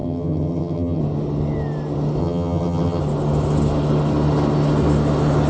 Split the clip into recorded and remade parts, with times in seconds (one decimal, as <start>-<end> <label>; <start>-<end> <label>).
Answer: 0.0-1.0 remade; 1.0-2.2 recorded; 2.2-3.0 remade; 3.0-5.5 recorded